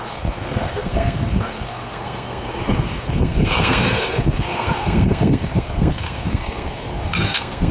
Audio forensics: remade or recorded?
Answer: remade